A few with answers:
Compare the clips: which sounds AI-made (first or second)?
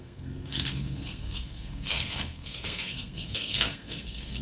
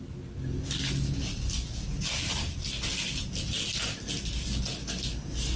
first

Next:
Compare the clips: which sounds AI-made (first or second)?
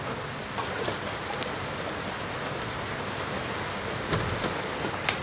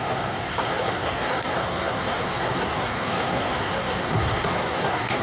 second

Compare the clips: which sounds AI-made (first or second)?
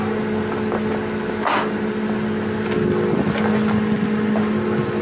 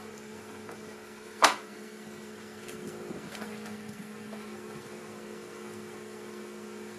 second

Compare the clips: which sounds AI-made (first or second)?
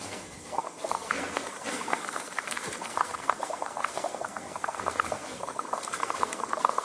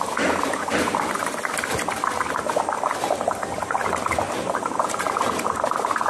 first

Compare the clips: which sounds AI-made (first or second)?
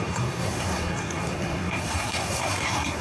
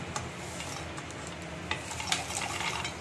first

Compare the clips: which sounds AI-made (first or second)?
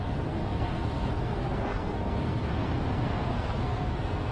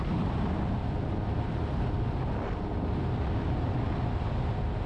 first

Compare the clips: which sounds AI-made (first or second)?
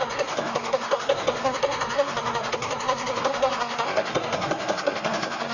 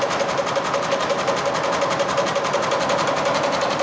first